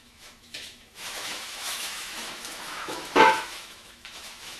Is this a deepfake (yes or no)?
yes